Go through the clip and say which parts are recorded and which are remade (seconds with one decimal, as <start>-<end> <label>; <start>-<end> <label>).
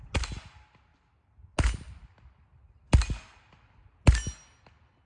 0.0-5.1 recorded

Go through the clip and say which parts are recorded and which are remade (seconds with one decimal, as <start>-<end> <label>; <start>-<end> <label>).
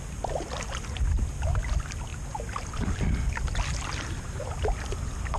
0.0-5.4 recorded